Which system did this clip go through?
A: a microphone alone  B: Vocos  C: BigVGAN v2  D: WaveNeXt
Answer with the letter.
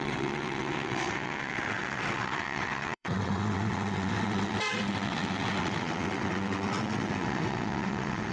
D